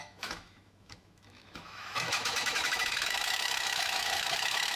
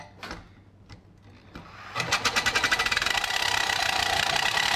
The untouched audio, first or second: second